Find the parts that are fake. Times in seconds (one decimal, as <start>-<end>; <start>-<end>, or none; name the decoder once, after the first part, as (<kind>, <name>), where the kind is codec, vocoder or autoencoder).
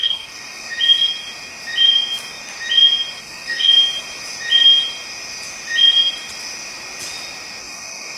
0.0-0.7 (codec, DAC); 3.2-3.7; 7.6-8.2